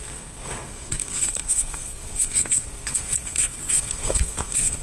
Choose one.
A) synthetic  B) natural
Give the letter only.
A